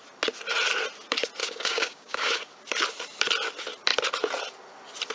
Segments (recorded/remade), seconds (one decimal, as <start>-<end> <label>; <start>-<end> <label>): 0.0-1.4 recorded; 1.4-2.4 remade; 2.4-5.1 recorded